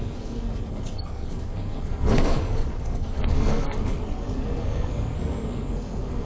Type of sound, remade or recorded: remade